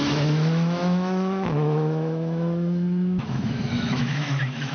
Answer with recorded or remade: remade